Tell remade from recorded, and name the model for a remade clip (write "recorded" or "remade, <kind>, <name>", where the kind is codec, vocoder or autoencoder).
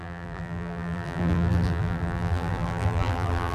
remade, vocoder, BigVGAN v2